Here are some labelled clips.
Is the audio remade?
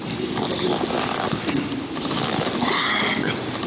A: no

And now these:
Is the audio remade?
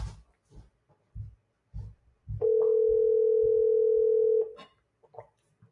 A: no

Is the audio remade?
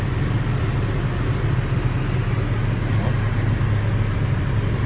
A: no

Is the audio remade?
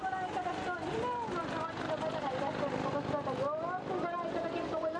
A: no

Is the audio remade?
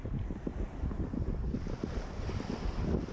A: no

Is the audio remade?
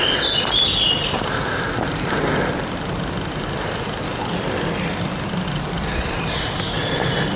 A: no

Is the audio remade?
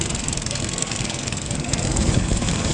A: yes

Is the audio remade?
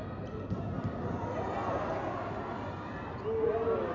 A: no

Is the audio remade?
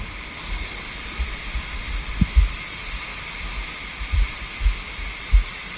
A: no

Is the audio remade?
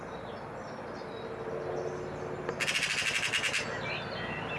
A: no